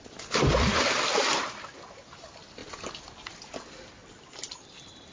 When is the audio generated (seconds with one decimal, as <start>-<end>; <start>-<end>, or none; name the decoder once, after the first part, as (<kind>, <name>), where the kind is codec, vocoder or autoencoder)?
0.0-1.4 (vocoder, BigVGAN v2); 2.2-2.6; 3.3-4.0; 4.5-5.1